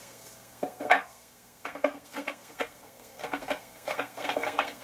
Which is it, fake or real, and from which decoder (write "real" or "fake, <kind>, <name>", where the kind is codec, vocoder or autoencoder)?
fake, codec, SNAC